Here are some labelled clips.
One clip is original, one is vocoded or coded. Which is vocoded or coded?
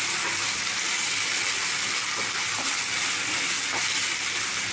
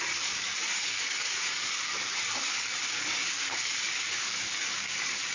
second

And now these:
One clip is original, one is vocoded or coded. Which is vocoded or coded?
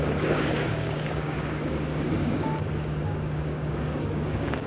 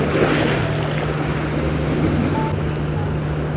first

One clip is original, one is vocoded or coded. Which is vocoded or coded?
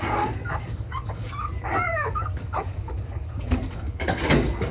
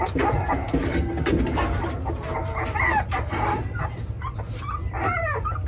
first